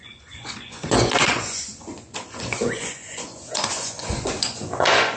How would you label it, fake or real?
fake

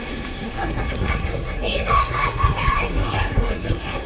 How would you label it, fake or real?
fake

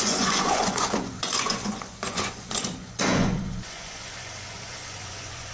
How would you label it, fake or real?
fake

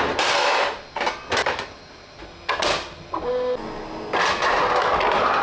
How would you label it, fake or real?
real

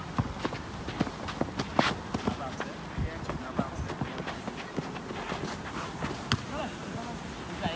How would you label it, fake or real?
real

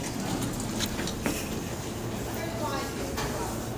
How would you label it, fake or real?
real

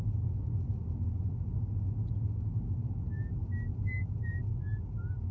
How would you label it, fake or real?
real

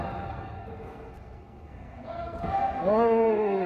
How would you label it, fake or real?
fake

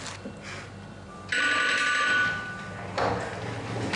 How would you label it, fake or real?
real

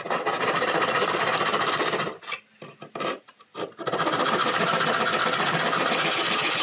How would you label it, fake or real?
real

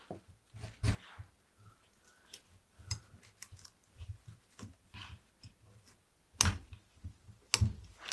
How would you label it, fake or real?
real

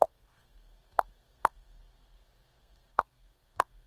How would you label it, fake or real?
fake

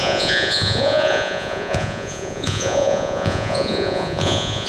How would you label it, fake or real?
fake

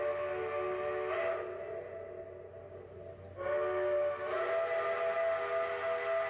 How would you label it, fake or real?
real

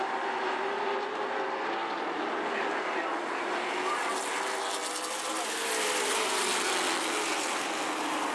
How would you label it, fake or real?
real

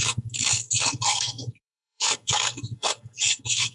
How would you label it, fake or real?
fake